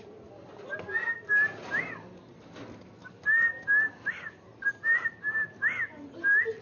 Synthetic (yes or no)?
no